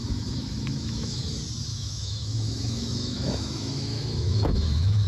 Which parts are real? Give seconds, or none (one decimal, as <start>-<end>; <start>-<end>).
1.2-1.7